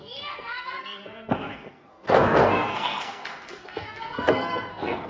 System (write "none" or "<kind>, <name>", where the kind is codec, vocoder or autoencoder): codec, SNAC